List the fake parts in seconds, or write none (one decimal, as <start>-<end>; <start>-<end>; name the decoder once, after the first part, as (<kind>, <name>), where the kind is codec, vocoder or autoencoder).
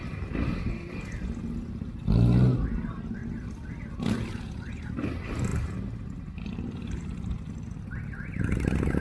none